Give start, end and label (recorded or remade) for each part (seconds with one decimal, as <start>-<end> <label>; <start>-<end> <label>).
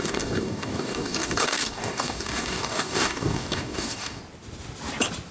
0.0-4.2 remade; 4.2-5.3 recorded